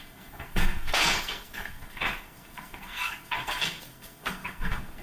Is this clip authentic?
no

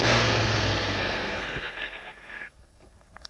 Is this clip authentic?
no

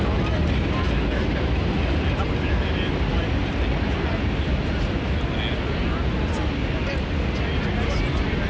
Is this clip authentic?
yes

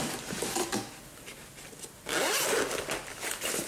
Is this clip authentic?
yes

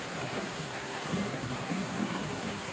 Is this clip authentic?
no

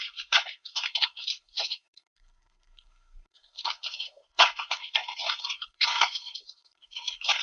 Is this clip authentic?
no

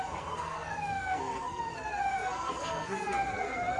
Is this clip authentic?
no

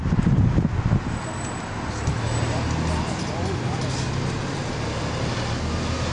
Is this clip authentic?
yes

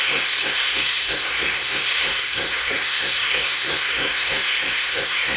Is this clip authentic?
no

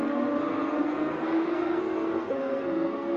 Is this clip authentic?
no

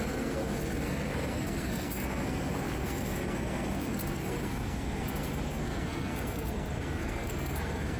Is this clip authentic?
no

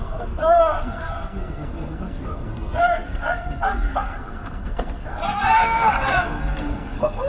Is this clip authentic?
no